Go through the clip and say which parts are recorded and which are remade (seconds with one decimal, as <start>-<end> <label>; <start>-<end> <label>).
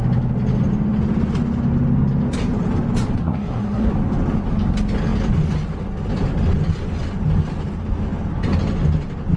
0.0-3.2 recorded; 3.2-3.9 remade; 3.9-9.4 recorded